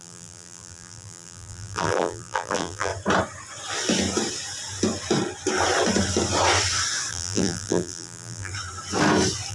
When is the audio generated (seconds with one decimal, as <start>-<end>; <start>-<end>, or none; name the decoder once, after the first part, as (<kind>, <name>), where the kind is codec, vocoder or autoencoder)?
0.0-2.9 (vocoder, BigVGAN v2); 7.1-8.5